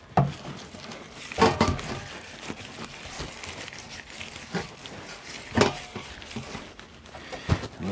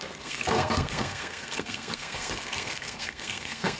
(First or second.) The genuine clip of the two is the first